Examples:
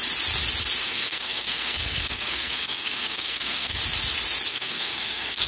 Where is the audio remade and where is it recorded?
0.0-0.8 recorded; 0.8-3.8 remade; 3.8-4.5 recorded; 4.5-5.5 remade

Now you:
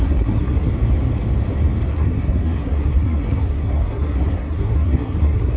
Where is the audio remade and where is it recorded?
0.0-0.7 remade; 0.7-1.9 recorded; 1.9-5.6 remade

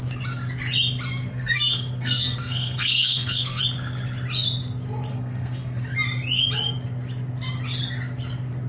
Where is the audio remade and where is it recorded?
0.0-1.3 recorded; 1.3-3.6 remade; 3.6-5.1 recorded; 5.1-5.8 remade; 5.8-8.7 recorded

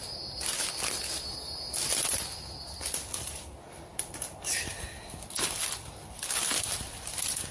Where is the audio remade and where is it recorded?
0.0-7.5 recorded